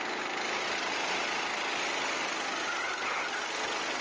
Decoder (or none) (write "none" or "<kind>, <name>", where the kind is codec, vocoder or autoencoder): none